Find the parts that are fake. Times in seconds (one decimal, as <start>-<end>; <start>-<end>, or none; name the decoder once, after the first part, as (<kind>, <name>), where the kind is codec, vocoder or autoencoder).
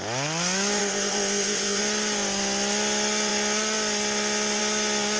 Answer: 0.8-1.8 (codec, ZipCodec)